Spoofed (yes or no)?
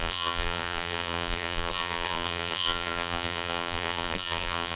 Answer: yes